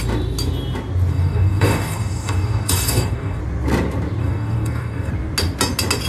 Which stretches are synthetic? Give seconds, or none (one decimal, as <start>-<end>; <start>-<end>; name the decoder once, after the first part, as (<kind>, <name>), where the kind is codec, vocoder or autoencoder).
1.1-3.4 (codec, DAC); 4.2-5.1

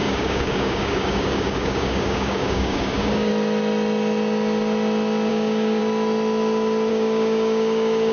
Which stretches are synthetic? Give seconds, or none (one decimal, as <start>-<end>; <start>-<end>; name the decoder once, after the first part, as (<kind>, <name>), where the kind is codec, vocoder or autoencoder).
0.0-3.3 (codec, DAC); 5.3-5.8; 6.9-8.1

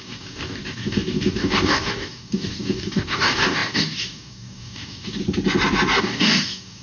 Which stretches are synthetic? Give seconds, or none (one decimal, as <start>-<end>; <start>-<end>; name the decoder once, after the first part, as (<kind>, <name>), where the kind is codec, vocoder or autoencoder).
0.0-5.2 (codec, DAC); 6.0-6.8

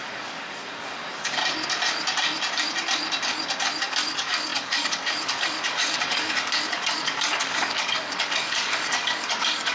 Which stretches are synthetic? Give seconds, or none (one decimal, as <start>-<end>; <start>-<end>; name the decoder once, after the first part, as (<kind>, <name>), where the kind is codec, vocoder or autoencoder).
0.0-1.4 (codec, DAC); 3.8-9.7

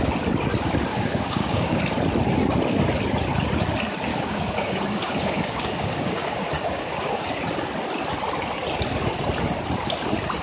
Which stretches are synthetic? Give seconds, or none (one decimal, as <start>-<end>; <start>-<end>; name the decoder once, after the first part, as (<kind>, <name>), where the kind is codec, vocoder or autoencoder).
0.9-1.8 (codec, DAC); 4.1-7.4

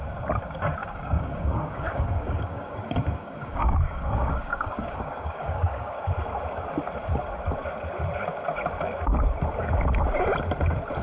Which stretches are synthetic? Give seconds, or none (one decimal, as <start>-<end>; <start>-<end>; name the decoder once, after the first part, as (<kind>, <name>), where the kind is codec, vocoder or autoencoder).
0.8-6.0 (codec, DAC)